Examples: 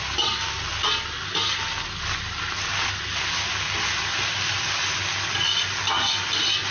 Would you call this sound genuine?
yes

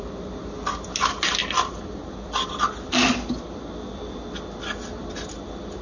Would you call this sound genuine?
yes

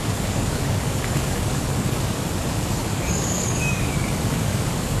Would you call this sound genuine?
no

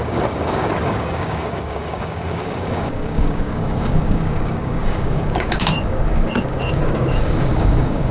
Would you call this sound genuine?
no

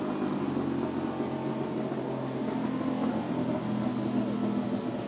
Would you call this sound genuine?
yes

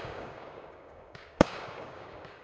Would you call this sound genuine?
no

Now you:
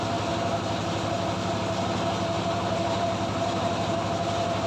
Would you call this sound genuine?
yes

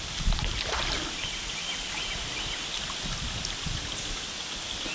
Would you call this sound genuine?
yes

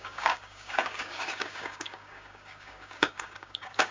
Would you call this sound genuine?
no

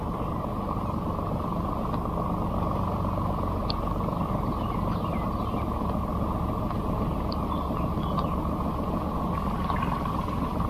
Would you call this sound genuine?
yes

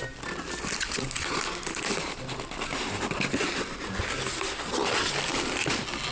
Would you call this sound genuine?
yes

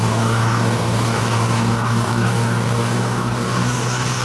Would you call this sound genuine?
no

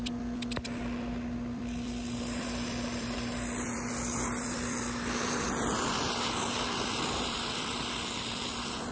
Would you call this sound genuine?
yes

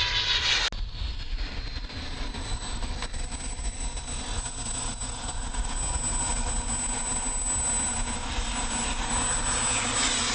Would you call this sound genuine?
yes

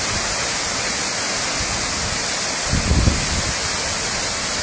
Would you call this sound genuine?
yes